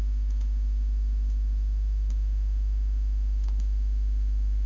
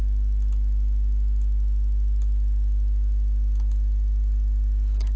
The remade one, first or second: first